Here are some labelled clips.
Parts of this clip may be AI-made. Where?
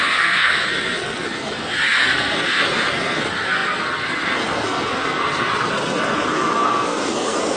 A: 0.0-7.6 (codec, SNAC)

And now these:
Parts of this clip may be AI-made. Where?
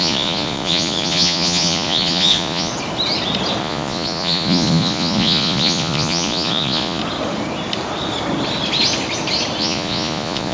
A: 0.0-2.7 (vocoder, Vocos); 3.6-7.0; 9.6-10.5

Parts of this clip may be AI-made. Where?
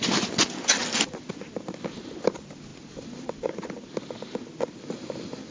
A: none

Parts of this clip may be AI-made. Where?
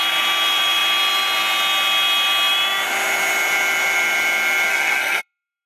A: 4.7-5.7 (codec, SNAC)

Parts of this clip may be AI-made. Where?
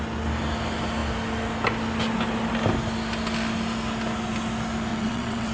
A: 4.9-5.5 (vocoder, WaveNeXt)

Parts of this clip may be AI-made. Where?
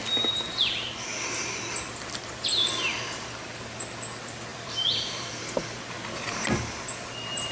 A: 4.5-5.4 (vocoder, BigVGAN v2)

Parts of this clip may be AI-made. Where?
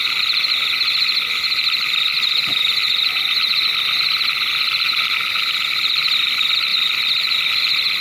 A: none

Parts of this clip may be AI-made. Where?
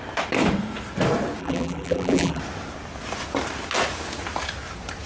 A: 1.4-2.4 (vocoder, BigVGAN v2)